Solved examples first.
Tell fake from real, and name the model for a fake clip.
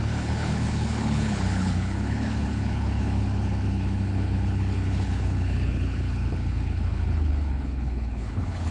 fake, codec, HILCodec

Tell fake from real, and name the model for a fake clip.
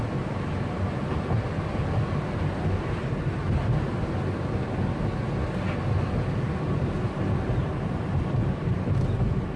real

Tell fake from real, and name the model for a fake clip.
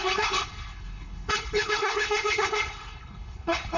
fake, codec, HILCodec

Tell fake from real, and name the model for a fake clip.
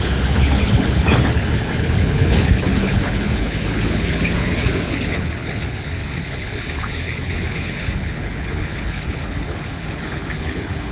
fake, codec, HILCodec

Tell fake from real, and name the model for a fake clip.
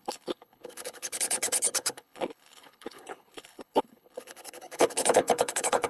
fake, codec, HILCodec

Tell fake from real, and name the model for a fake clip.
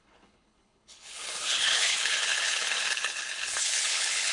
fake, codec, HILCodec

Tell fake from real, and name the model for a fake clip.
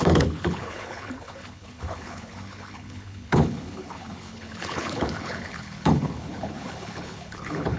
fake, codec, HILCodec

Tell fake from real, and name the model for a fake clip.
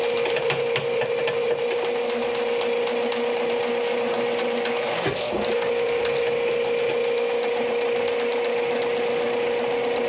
real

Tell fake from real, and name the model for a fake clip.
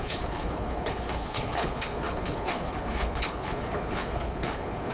fake, codec, HILCodec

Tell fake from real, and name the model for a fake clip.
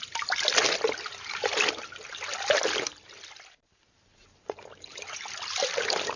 real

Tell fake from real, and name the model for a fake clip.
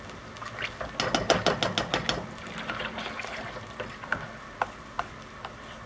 real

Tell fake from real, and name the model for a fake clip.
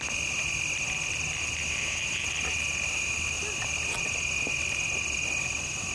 real